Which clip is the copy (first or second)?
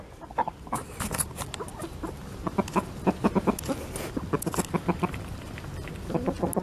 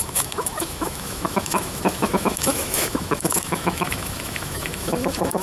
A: second